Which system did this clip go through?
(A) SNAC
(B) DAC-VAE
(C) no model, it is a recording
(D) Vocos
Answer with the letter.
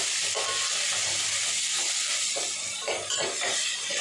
C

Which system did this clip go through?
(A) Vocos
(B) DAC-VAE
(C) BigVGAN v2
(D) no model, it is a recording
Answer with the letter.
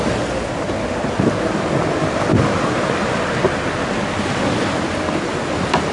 D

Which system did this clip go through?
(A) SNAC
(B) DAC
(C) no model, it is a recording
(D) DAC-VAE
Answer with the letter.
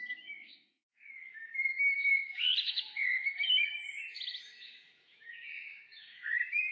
D